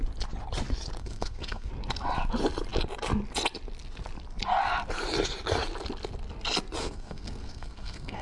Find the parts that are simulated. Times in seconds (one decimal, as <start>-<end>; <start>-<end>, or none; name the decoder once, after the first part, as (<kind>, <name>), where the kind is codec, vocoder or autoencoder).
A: 1.0-1.7 (codec, SNAC); 6.8-8.2